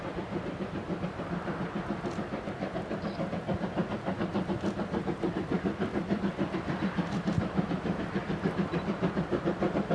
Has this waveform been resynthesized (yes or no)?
yes